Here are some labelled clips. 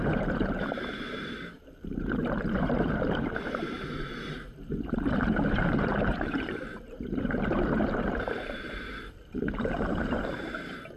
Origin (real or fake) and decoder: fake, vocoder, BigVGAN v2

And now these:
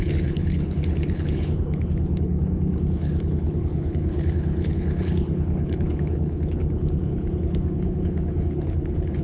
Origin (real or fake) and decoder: fake, codec, HILCodec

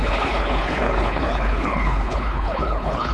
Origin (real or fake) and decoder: fake, codec, HILCodec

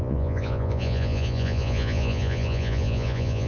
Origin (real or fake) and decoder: fake, vocoder, Vocos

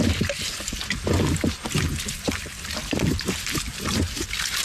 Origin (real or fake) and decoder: real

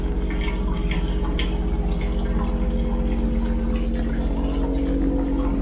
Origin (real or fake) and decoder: real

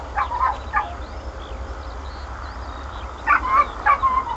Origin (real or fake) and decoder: real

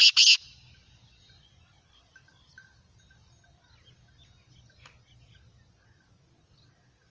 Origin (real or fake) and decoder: real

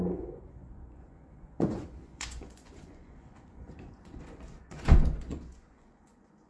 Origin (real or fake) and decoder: fake, vocoder, Vocos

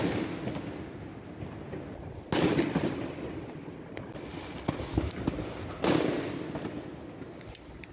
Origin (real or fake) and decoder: real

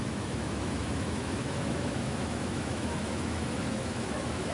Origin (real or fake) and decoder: fake, autoencoder, DAC-VAE